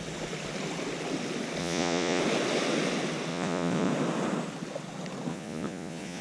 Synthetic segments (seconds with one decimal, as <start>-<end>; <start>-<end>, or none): 1.6-2.2; 3.3-3.9; 5.3-6.2